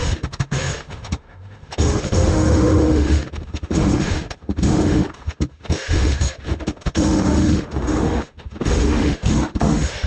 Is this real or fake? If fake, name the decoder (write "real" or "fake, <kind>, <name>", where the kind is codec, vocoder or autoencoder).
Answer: fake, autoencoder, DAC-VAE